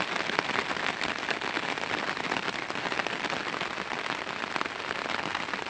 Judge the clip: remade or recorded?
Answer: recorded